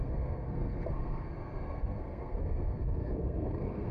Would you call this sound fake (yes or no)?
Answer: yes